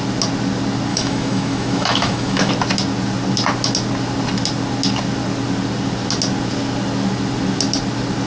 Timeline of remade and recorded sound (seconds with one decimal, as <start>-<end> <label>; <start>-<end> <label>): 0.0-0.9 recorded; 0.9-2.5 remade; 2.5-8.3 recorded